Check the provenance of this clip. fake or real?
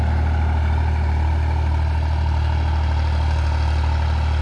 real